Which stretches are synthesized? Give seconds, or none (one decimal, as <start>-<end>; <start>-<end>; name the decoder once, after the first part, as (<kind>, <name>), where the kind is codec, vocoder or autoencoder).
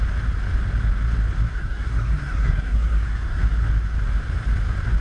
1.5-3.4 (codec, SNAC)